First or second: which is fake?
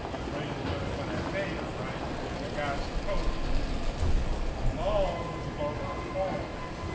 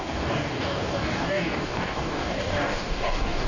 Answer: second